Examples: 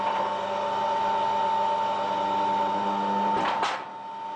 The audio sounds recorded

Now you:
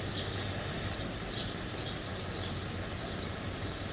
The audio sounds recorded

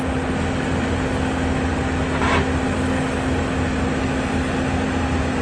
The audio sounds recorded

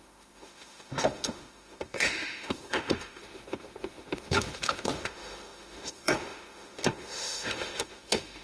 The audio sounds remade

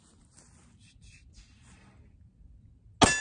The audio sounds recorded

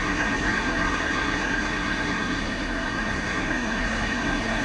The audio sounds remade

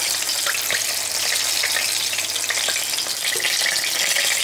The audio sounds recorded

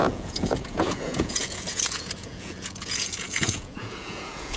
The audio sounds remade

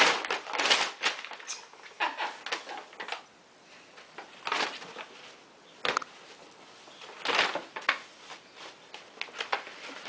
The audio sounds recorded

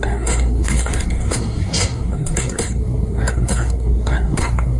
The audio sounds remade